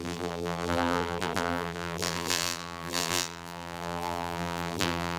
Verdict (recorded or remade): remade